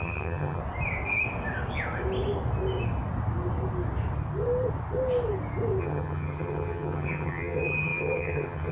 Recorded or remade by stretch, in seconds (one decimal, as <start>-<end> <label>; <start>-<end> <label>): 0.0-0.6 remade; 0.6-5.8 recorded; 5.8-8.7 remade